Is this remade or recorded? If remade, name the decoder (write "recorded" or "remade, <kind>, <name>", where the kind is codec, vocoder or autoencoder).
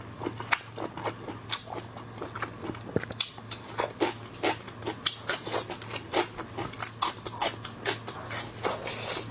recorded